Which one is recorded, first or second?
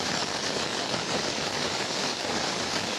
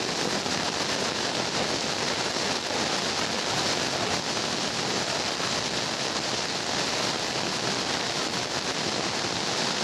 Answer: second